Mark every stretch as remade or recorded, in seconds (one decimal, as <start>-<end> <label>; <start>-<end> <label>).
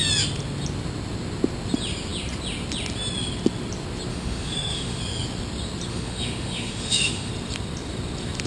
0.0-4.1 recorded; 4.1-5.0 remade; 5.0-5.9 recorded; 5.9-7.3 remade; 7.3-8.5 recorded